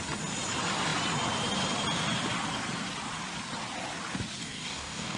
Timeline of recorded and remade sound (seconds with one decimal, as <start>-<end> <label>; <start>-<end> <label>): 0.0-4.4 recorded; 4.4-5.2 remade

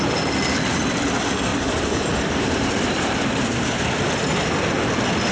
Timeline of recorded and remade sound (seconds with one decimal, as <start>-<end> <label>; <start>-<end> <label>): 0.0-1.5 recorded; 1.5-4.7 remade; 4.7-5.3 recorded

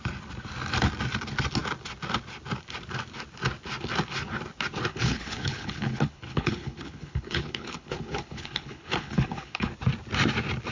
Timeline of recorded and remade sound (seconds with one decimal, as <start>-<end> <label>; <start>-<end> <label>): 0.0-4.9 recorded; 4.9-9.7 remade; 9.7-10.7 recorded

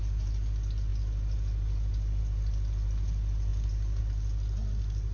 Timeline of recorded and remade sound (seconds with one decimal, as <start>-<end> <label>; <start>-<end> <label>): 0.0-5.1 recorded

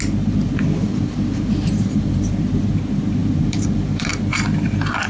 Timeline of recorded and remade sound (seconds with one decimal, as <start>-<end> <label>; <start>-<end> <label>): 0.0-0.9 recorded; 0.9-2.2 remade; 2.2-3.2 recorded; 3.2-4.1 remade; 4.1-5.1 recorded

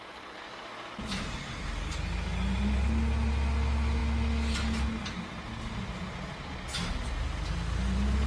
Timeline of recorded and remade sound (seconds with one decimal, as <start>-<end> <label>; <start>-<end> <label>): 0.0-8.3 recorded

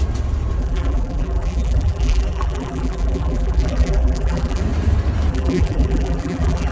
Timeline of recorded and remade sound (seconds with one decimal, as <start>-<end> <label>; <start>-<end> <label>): 0.0-0.6 recorded; 0.6-4.6 remade; 4.6-5.3 recorded; 5.3-6.7 remade